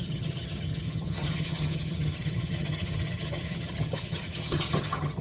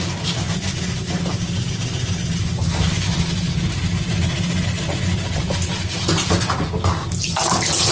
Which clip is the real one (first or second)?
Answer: second